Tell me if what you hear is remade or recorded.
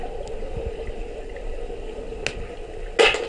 recorded